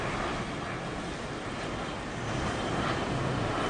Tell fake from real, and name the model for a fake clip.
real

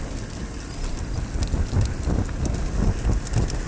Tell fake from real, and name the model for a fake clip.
real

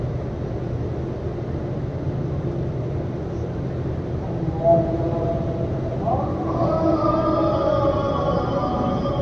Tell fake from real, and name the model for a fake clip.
real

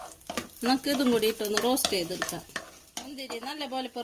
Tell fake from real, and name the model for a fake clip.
real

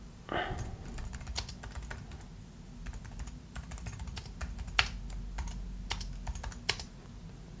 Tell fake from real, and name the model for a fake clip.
real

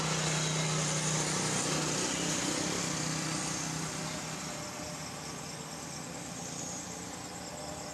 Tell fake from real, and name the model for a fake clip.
real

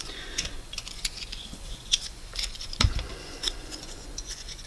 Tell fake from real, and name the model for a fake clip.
fake, vocoder, Vocos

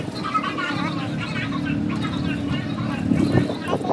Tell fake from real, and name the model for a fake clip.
real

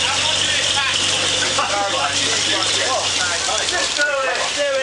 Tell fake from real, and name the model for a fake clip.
fake, vocoder, BigVGAN v2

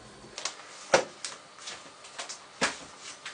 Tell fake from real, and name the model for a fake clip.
real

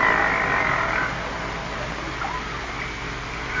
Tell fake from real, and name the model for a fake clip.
real